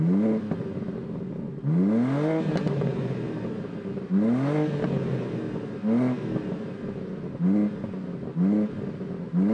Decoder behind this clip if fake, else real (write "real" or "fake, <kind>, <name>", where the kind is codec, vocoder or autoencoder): real